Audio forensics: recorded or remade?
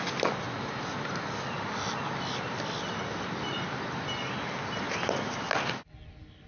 recorded